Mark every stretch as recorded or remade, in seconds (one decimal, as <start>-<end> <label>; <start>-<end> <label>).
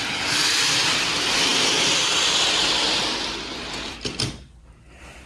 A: 0.0-5.3 recorded